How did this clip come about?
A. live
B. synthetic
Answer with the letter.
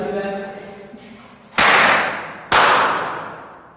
A